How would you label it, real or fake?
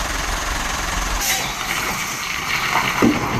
real